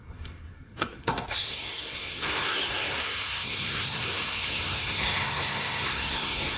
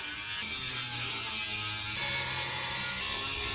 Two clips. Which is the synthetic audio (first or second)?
first